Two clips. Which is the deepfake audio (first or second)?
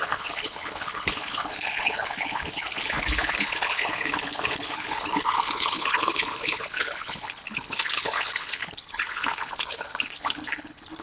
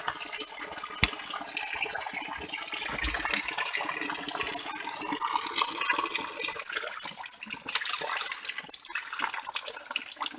first